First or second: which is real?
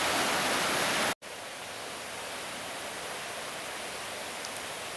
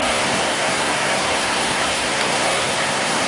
first